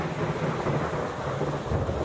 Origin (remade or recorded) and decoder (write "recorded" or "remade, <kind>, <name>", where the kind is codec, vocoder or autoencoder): recorded